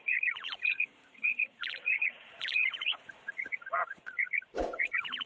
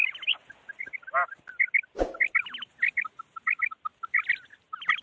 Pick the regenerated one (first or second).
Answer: first